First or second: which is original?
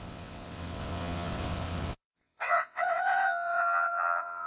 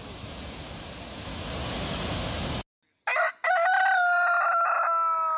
second